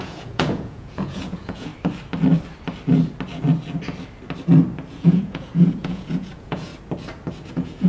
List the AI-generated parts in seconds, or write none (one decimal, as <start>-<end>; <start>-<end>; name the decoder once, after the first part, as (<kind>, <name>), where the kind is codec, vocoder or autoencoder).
0.0-1.7 (vocoder, Vocos); 4.9-6.7; 7.5-7.9